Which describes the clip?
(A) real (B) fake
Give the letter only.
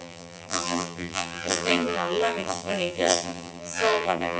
B